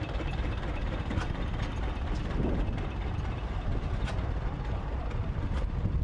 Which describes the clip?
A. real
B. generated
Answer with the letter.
A